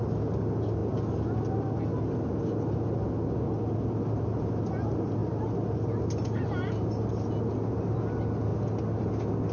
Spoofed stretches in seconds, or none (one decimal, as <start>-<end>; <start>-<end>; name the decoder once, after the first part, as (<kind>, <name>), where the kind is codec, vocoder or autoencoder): none